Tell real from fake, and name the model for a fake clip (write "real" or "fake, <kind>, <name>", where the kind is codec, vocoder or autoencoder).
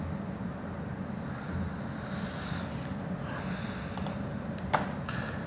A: real